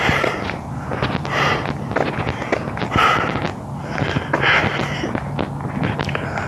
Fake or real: real